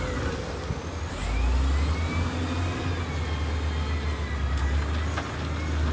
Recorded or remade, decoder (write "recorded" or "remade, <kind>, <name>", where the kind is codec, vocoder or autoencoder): recorded